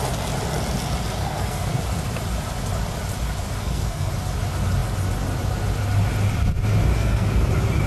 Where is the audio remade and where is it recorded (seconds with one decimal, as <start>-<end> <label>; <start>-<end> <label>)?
0.0-1.2 recorded; 1.2-1.8 remade; 1.8-3.6 recorded; 3.6-4.1 remade; 4.1-6.9 recorded; 6.9-7.5 remade; 7.5-7.9 recorded